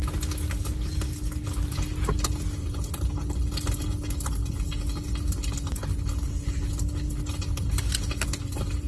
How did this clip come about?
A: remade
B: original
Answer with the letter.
B